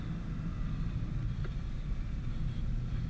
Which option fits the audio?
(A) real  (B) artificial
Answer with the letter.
A